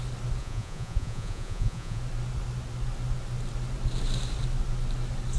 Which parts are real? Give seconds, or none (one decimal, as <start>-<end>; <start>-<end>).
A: 0.0-0.4; 2.0-5.4